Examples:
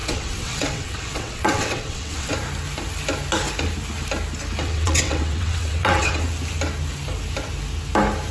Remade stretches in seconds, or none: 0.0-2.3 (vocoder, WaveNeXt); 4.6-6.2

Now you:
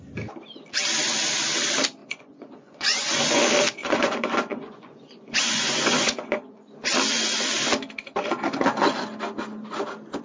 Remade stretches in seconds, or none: 2.0-3.4 (vocoder, Vocos); 3.8-6.6

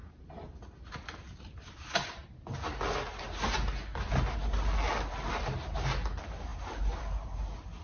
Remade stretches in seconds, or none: none